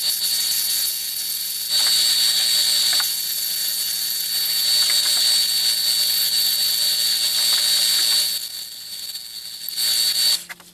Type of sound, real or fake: real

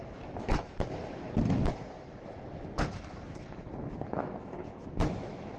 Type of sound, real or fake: fake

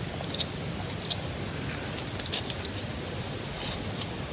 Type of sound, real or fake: real